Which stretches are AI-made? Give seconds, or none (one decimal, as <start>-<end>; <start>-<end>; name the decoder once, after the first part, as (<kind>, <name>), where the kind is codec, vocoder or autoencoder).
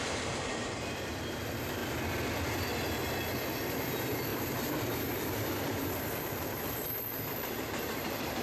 0.0-1.8 (vocoder, BigVGAN v2); 3.7-8.4